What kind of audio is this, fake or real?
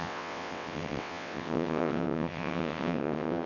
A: fake